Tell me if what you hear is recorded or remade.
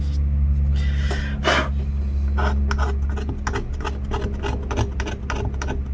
recorded